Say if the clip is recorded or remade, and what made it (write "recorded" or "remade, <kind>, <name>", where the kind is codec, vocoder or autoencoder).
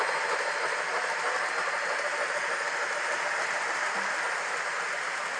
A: recorded